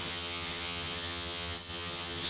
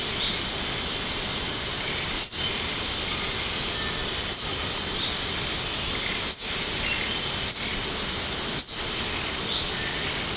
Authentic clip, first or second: second